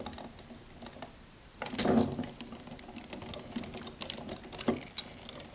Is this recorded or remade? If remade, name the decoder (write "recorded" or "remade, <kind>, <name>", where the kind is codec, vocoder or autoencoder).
recorded